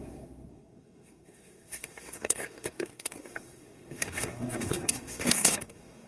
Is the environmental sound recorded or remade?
remade